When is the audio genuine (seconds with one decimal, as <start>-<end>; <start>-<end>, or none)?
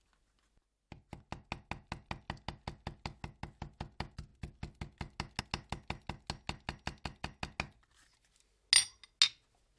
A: 0.0-9.8